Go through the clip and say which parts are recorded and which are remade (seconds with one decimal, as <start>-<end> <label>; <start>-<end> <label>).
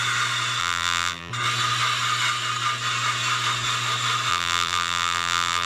0.0-0.6 recorded; 0.6-1.3 remade; 1.3-4.3 recorded; 4.3-5.7 remade